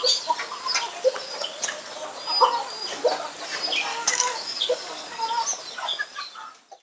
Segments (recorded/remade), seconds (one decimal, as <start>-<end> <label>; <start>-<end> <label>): 0.0-3.9 recorded; 3.9-5.3 remade; 5.3-6.8 recorded